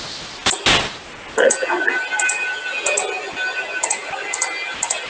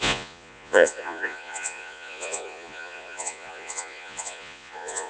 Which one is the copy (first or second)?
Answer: second